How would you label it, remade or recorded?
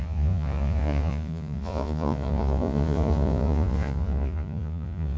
remade